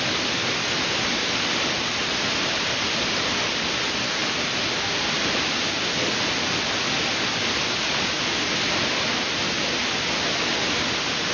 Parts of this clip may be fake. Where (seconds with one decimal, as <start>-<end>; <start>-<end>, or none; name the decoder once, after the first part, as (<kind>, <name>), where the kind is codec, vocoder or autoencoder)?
4.2-8.8 (vocoder, BigVGAN v2)